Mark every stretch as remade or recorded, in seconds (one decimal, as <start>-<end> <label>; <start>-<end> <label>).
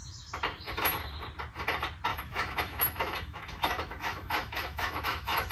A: 0.0-2.1 recorded; 2.1-5.5 remade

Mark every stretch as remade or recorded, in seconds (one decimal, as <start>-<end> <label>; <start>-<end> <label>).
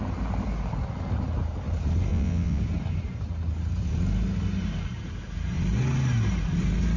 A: 0.0-2.1 recorded; 2.1-2.6 remade; 2.6-7.0 recorded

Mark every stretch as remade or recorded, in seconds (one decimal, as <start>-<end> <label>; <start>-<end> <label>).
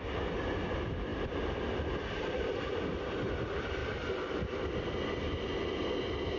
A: 0.0-6.4 recorded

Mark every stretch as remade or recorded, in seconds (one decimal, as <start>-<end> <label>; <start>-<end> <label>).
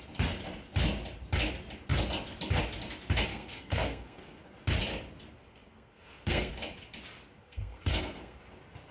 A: 0.0-3.3 recorded; 3.3-4.4 remade; 4.4-5.4 recorded; 5.4-6.5 remade; 6.5-7.4 recorded; 7.4-8.4 remade; 8.4-8.9 recorded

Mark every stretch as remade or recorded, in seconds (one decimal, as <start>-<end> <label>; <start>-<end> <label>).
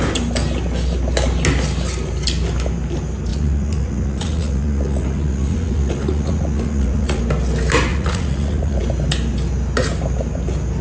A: 0.0-3.3 recorded; 3.3-7.2 remade; 7.2-7.9 recorded; 7.9-8.8 remade; 8.8-10.8 recorded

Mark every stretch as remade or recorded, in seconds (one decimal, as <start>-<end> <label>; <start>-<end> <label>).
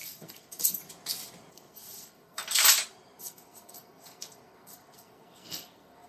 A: 0.0-0.8 remade; 0.8-1.5 recorded; 1.5-2.6 remade; 2.6-3.2 recorded; 3.2-6.1 remade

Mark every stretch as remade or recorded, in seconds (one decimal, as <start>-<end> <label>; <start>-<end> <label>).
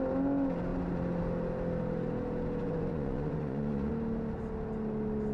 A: 0.0-2.6 recorded; 2.6-3.9 remade; 3.9-5.3 recorded